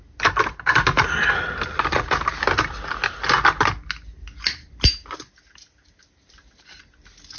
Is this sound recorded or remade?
recorded